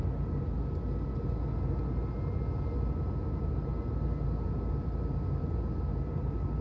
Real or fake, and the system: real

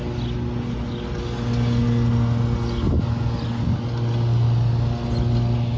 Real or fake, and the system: real